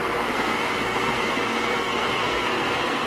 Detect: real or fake fake